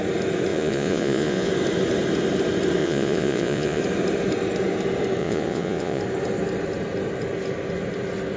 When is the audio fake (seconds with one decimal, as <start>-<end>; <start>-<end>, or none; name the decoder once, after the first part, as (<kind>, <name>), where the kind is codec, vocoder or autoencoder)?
0.5-1.5 (vocoder, Vocos); 2.8-3.8; 5.2-6.0